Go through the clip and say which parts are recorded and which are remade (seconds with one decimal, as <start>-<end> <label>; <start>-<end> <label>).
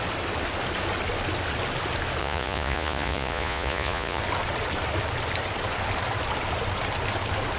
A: 0.0-2.2 recorded; 2.2-4.2 remade; 4.2-7.6 recorded